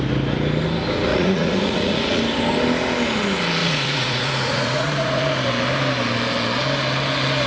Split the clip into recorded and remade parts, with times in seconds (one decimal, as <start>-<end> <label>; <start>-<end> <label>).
0.0-1.1 recorded; 1.1-2.2 remade; 2.2-3.6 recorded; 3.6-5.2 remade; 5.2-7.5 recorded

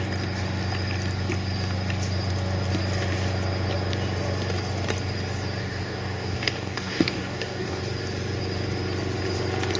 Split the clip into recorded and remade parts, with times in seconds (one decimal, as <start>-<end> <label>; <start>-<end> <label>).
0.0-5.6 recorded; 5.6-7.8 remade; 7.8-9.8 recorded

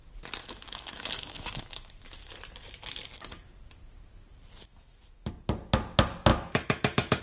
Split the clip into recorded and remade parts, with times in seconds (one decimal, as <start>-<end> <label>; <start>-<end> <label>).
0.0-0.4 recorded; 0.4-2.3 remade; 2.3-4.7 recorded; 4.7-5.3 remade; 5.3-6.3 recorded; 6.3-7.2 remade

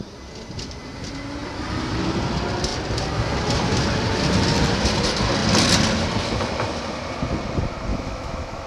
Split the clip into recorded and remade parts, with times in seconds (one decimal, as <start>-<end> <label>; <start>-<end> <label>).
0.0-7.9 recorded; 7.9-8.7 remade